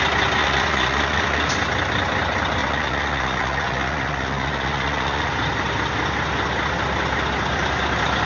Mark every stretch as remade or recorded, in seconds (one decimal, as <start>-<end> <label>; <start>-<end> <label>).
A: 0.0-0.4 recorded; 0.4-1.5 remade; 1.5-2.6 recorded; 2.6-5.3 remade; 5.3-8.2 recorded